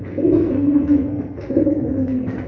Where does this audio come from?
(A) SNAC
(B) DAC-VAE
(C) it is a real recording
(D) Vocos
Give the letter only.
A